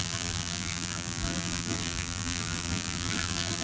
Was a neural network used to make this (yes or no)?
yes